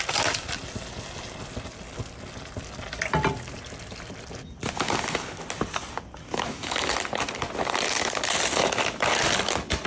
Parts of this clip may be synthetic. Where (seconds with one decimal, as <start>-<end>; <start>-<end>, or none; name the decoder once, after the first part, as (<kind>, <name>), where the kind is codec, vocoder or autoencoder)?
6.3-6.9 (autoencoder, DAC-VAE)